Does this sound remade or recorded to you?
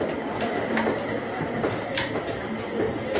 recorded